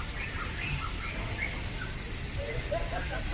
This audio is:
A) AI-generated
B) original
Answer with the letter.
B